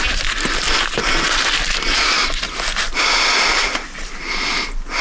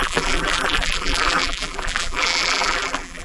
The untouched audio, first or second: first